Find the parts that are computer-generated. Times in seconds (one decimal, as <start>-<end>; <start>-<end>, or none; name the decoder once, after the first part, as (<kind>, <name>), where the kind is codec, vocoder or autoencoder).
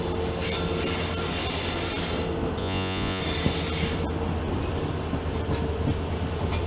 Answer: 2.6-3.2 (vocoder, Vocos)